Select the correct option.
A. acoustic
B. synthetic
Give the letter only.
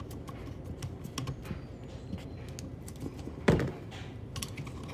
A